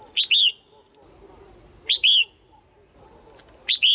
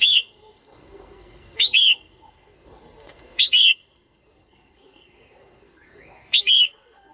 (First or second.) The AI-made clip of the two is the second